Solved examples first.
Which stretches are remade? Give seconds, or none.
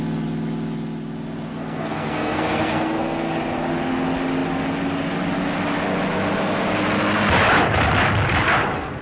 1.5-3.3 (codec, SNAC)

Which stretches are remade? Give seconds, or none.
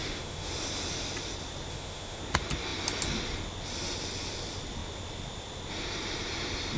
0.0-0.5 (autoencoder, DAC-VAE); 1.7-2.2